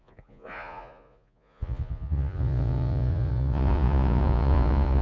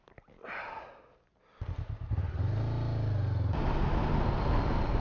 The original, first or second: second